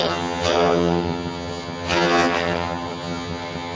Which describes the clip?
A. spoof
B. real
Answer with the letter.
A